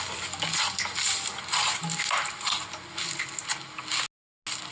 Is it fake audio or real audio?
real